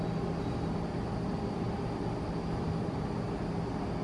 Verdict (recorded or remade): recorded